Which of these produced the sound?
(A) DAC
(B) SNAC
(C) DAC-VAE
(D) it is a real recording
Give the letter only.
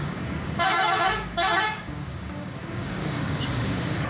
A